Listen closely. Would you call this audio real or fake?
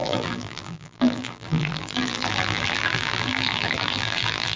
fake